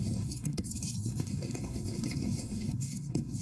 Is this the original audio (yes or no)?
no